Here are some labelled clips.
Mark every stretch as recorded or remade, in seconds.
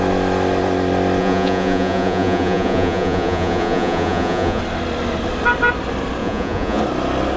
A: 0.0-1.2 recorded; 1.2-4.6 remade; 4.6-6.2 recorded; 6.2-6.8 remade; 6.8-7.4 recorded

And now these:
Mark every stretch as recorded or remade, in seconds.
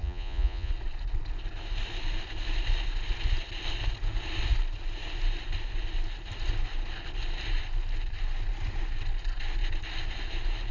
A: 0.0-0.7 remade; 0.7-10.7 recorded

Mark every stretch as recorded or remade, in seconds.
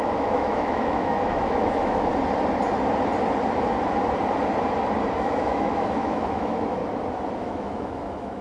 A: 0.0-2.1 remade; 2.1-5.1 recorded; 5.1-6.8 remade; 6.8-7.4 recorded; 7.4-8.4 remade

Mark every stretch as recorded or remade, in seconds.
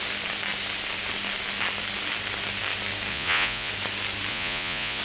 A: 0.0-3.1 recorded; 3.1-3.7 remade; 3.7-4.3 recorded; 4.3-5.0 remade